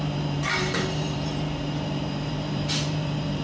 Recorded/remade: remade